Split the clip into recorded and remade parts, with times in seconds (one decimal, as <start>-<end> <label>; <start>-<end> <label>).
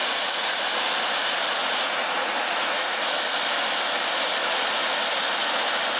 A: 0.0-0.6 remade; 0.6-1.6 recorded; 1.6-3.1 remade; 3.1-6.0 recorded